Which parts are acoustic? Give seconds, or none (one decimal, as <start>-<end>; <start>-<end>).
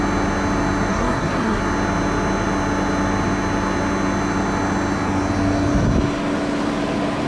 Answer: 0.0-0.9; 1.6-7.3